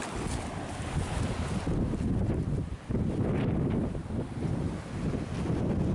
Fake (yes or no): no